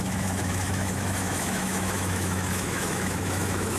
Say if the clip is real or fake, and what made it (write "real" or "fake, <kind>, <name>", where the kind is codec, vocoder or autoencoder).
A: fake, autoencoder, DAC-VAE